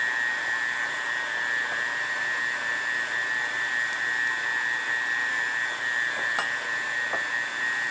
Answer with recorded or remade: recorded